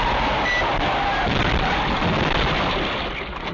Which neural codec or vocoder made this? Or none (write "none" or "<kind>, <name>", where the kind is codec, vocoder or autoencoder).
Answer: none